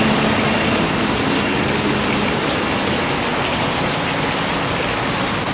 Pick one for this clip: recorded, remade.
recorded